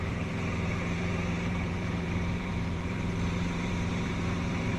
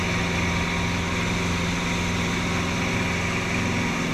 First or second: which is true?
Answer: second